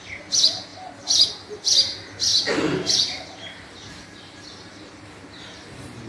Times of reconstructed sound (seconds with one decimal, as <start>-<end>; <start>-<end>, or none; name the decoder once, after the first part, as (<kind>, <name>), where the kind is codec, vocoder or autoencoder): 0.7-1.3 (vocoder, BigVGAN v2); 2.3-6.1